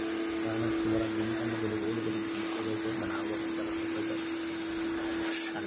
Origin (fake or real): real